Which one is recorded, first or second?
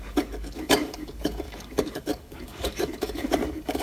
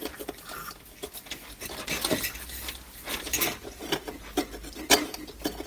second